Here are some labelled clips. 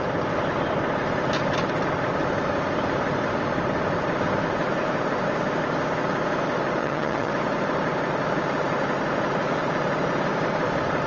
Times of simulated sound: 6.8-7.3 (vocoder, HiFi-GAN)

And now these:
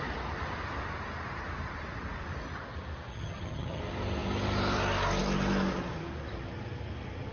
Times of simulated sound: 3.1-3.8 (vocoder, HiFi-GAN)

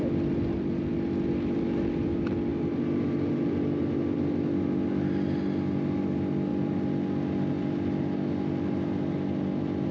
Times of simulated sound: none

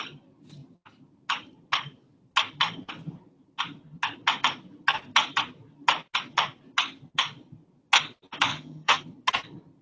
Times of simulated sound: 8.5-9.0 (vocoder, HiFi-GAN)

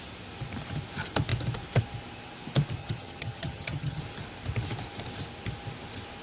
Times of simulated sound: 2.8-4.0 (vocoder, HiFi-GAN)

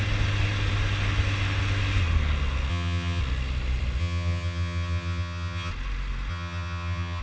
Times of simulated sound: 2.7-3.2 (vocoder, HiFi-GAN); 4.0-5.7; 6.3-7.2

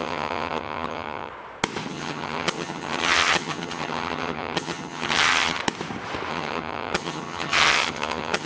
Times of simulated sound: 0.0-1.3 (vocoder, HiFi-GAN); 1.9-5.6; 6.3-8.4